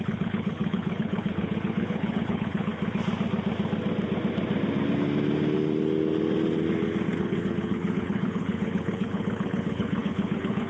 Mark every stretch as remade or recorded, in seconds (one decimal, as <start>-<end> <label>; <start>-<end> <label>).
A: 0.0-2.7 remade; 2.7-7.2 recorded; 7.2-10.7 remade